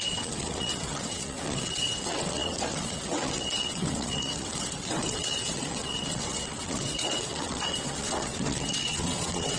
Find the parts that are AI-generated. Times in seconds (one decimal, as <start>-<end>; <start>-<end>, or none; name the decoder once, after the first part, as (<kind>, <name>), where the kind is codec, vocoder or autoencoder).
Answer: 0.0-9.6 (vocoder, WaveNeXt)